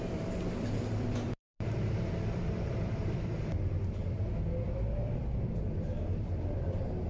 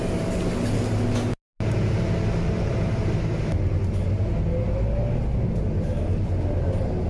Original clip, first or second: second